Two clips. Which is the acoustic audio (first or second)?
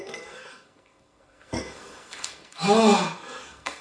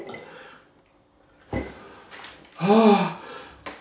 second